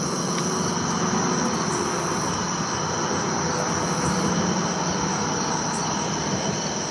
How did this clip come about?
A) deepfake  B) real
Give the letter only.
B